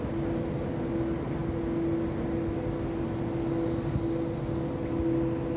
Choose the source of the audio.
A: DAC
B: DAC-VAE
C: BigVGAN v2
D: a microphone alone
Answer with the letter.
D